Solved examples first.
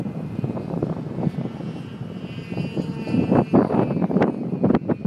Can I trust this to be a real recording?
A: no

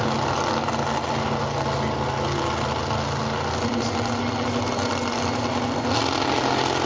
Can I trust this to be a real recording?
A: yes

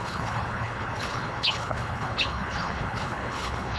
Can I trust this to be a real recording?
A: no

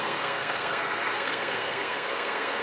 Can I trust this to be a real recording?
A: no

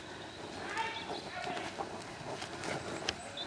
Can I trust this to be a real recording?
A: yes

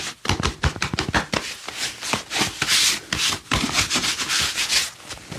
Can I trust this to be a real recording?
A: yes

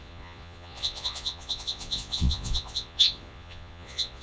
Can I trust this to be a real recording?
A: no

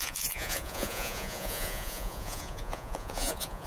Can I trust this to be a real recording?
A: no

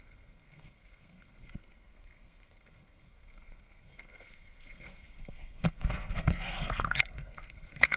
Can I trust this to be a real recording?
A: no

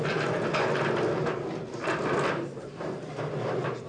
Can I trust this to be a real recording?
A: yes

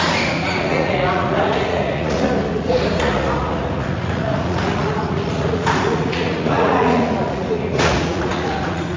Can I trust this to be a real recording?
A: no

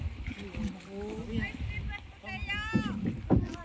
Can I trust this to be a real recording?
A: yes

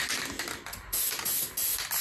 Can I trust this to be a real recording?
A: yes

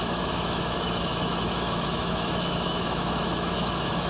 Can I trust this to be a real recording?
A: no